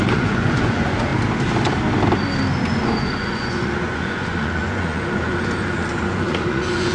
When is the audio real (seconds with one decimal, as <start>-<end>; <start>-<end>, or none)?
1.1-2.6